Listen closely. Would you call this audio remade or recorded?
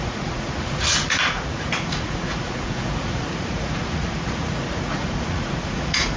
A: remade